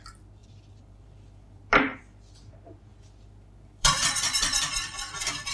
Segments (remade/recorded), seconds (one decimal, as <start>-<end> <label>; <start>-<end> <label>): 0.0-0.4 recorded; 0.4-2.0 remade; 2.0-2.9 recorded; 2.9-4.6 remade; 4.6-5.5 recorded